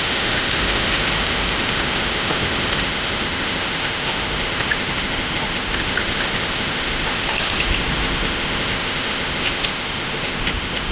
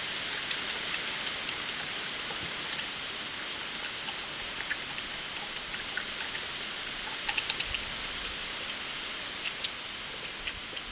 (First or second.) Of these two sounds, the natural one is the second